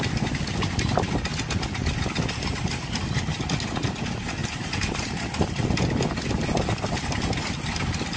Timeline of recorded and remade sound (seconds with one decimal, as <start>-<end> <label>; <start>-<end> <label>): 0.0-8.2 recorded